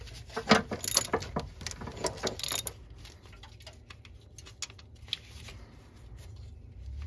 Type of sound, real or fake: real